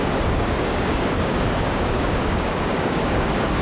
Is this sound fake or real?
fake